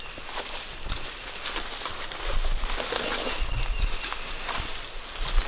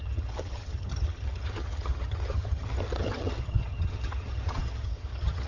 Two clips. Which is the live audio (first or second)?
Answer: first